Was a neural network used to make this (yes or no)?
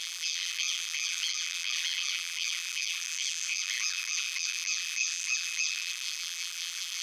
yes